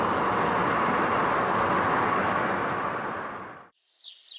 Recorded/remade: recorded